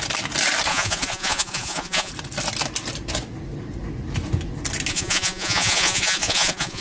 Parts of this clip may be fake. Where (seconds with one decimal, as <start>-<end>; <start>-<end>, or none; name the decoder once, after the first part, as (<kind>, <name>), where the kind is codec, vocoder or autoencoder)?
0.7-2.1 (vocoder, Vocos); 4.9-6.8

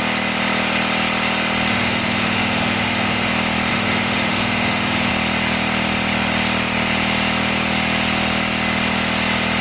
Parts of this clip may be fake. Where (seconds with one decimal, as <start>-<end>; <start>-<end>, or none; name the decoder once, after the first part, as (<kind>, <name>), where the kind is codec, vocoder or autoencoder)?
1.7-3.3 (autoencoder, DAC-VAE); 3.7-5.1

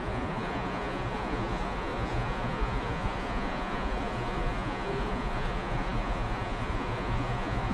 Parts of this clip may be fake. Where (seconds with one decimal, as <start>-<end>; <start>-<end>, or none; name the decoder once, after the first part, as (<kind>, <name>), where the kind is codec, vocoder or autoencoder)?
0.0-7.7 (vocoder, Vocos)